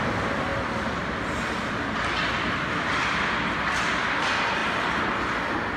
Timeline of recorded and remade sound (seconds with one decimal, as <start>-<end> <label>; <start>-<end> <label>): 0.0-4.6 recorded; 4.6-5.2 remade; 5.2-5.8 recorded

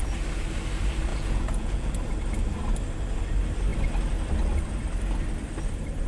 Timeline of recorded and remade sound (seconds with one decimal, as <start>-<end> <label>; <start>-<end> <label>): 0.0-1.1 recorded; 1.1-1.9 remade; 1.9-6.1 recorded